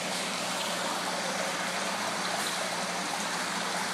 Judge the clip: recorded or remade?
remade